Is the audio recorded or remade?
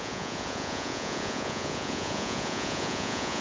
remade